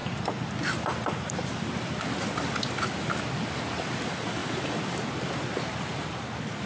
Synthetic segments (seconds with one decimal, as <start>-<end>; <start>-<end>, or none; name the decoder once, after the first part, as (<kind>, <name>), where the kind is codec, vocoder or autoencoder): none